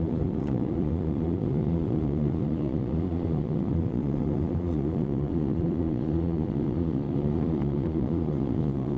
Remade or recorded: remade